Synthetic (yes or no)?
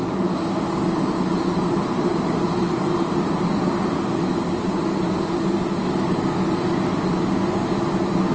no